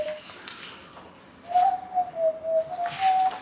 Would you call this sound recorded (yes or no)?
yes